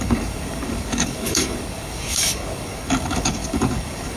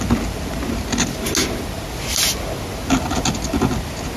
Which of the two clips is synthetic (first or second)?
first